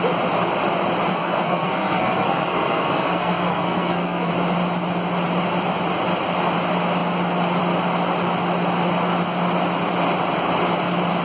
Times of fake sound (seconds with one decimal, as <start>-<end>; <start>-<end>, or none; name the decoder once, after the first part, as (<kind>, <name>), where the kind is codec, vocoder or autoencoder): 1.1-4.3 (codec, SNAC)